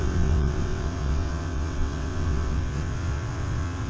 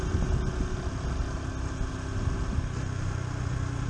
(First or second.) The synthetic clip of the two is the first